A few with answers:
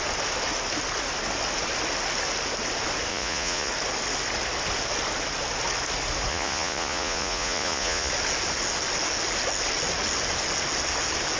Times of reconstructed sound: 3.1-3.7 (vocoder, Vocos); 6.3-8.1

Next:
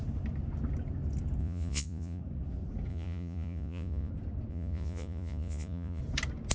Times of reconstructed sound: 1.4-2.2 (vocoder, Vocos); 2.9-4.1; 4.5-6.0

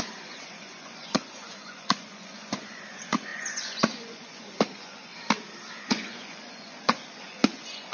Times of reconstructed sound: 0.0-5.1 (vocoder, Vocos); 5.8-7.9

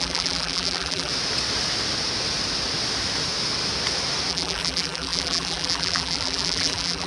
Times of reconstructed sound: 0.0-1.1 (vocoder, BigVGAN v2); 4.3-7.1

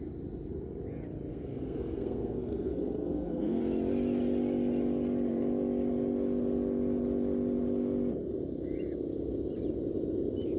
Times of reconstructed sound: 1.3-3.6 (codec, SNAC)

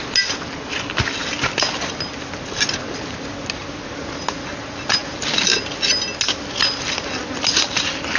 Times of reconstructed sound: none

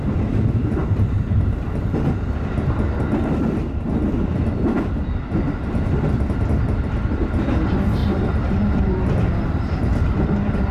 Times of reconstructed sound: 0.8-1.7 (vocoder, BigVGAN v2); 3.2-4.9; 8.0-10.7

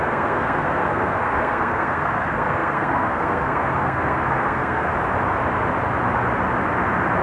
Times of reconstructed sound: 0.0-4.9 (codec, SNAC)